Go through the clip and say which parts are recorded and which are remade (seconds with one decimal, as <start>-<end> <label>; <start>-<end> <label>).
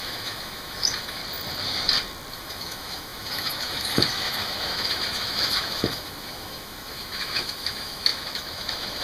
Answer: 0.0-1.2 remade; 1.2-2.3 recorded; 2.3-9.0 remade